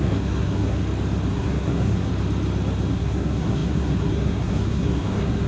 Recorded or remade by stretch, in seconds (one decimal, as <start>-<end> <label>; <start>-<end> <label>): 0.0-0.8 remade; 0.8-1.3 recorded; 1.3-2.1 remade; 2.1-2.9 recorded; 2.9-5.5 remade